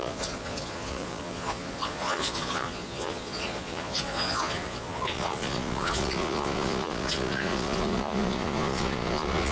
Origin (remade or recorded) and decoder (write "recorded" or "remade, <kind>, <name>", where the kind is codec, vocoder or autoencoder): remade, vocoder, Vocos